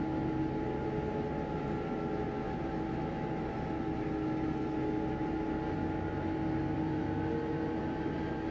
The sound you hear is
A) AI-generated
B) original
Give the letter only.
B